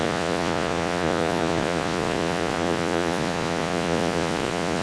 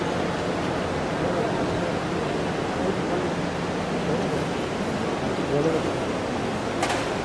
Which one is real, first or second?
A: second